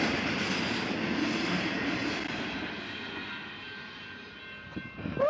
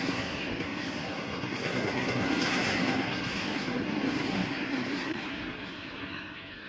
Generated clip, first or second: second